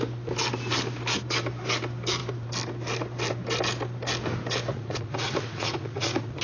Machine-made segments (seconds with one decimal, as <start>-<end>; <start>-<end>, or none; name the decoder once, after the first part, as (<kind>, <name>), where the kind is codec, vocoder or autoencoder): 4.7-6.4 (vocoder, Vocos)